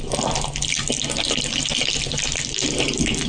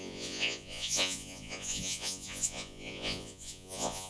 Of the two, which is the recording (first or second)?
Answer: first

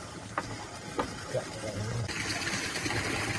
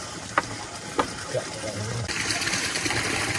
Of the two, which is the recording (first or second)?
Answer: first